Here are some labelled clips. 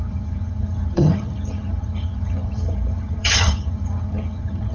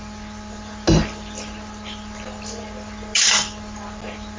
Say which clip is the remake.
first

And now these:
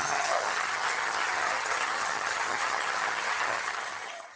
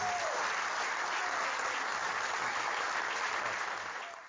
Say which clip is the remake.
first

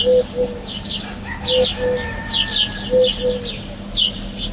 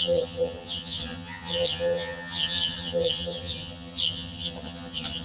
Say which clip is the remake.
second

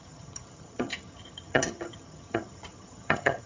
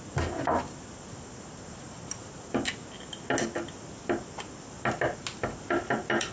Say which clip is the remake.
first